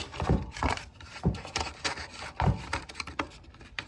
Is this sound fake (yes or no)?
yes